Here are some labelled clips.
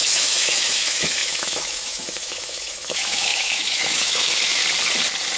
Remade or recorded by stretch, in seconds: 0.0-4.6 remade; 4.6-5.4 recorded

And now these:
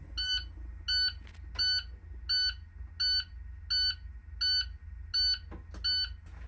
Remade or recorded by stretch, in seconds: 0.0-6.5 recorded